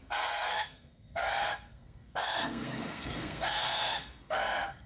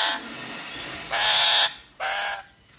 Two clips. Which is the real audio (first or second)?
second